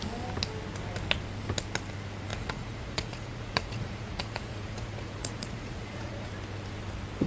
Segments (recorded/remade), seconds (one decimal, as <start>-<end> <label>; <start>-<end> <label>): 0.0-2.3 recorded; 2.3-6.3 remade; 6.3-7.3 recorded